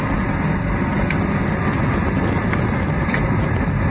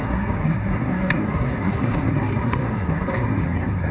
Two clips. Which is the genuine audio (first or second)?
first